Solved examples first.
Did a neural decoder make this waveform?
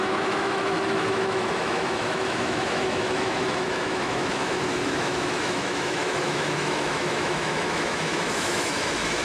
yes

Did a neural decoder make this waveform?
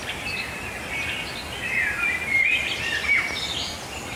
no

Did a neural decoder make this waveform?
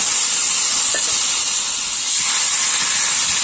no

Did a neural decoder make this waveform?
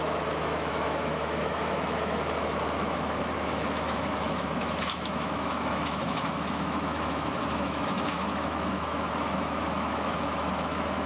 yes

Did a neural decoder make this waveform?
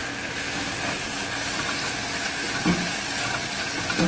no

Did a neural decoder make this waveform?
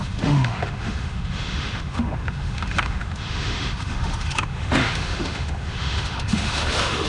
yes